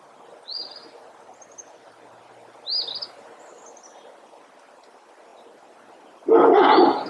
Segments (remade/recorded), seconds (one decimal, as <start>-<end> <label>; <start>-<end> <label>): 0.0-7.1 recorded

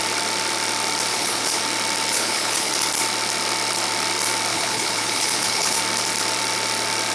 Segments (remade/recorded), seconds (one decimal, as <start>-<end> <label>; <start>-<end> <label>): 0.0-1.1 recorded; 1.1-1.6 remade; 1.6-2.1 recorded; 2.1-2.7 remade; 2.7-4.5 recorded; 4.5-5.8 remade; 5.8-7.1 recorded

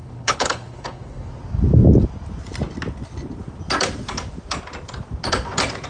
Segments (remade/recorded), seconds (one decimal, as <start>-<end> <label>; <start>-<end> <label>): 0.0-1.3 remade; 1.3-5.9 recorded

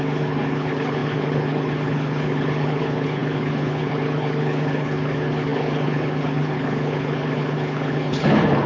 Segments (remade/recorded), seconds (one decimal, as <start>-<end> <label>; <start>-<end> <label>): 0.0-8.7 remade

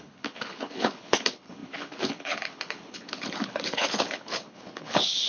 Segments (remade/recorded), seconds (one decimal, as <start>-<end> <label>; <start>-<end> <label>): 0.0-5.3 remade

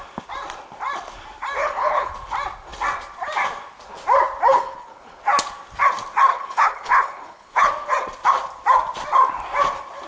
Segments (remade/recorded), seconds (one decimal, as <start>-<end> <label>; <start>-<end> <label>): 0.0-1.6 recorded; 1.6-2.1 remade; 2.1-4.5 recorded; 4.5-5.2 remade; 5.2-6.3 recorded; 6.3-7.7 remade; 7.7-10.1 recorded

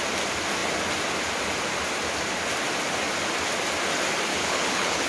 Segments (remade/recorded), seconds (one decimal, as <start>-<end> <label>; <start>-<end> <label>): 0.0-4.3 recorded; 4.3-5.1 remade

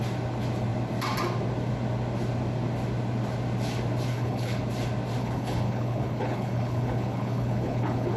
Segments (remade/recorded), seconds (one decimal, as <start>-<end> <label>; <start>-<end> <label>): 0.0-4.1 recorded; 4.1-4.6 remade; 4.6-5.2 recorded; 5.2-8.2 remade